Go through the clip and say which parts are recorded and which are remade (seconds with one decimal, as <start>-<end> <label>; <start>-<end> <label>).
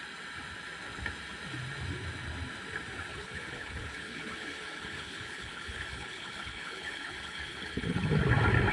0.0-3.1 recorded; 3.1-8.0 remade; 8.0-8.7 recorded